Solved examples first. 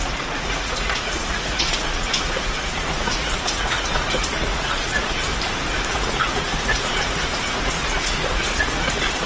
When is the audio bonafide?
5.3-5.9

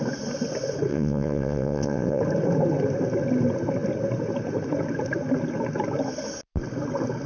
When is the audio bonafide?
0.0-0.9; 2.2-7.3

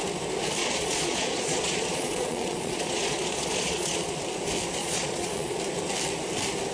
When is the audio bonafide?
0.0-0.6; 4.1-4.8; 5.6-6.7

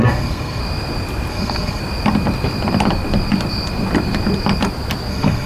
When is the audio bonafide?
0.6-1.3; 1.8-5.1

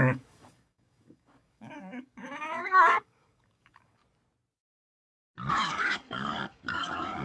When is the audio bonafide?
4.0-5.5

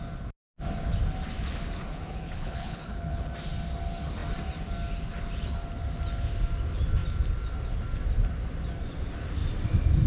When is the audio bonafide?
0.0-1.9; 3.3-10.1

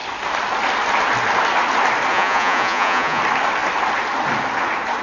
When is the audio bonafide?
0.0-2.1; 3.2-5.0